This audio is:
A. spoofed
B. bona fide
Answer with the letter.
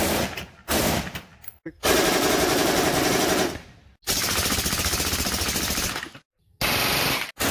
B